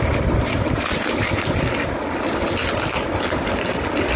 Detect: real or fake real